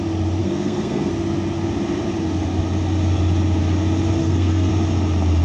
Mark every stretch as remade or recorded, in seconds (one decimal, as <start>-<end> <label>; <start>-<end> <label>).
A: 0.0-0.4 recorded; 0.4-1.1 remade; 1.1-4.2 recorded; 4.2-4.7 remade; 4.7-5.4 recorded